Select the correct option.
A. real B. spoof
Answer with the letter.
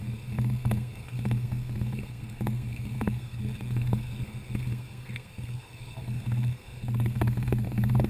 B